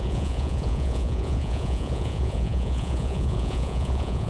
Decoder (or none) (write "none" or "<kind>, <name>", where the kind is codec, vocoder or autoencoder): vocoder, Vocos